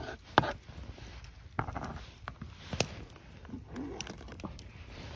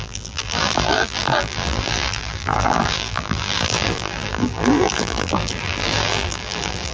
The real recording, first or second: first